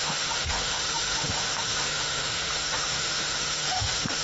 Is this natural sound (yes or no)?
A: no